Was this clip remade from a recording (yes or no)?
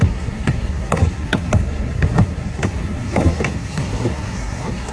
yes